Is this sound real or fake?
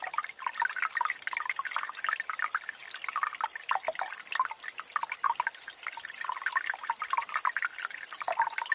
real